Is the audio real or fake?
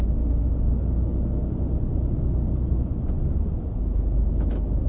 real